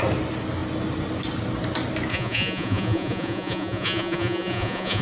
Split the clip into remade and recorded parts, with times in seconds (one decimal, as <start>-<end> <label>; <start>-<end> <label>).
0.0-2.1 recorded; 2.1-5.0 remade